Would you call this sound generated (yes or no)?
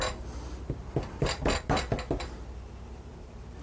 no